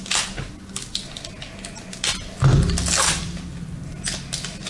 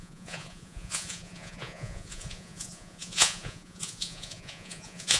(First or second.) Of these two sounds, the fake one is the second